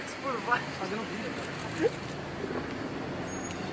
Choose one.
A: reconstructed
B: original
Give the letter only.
B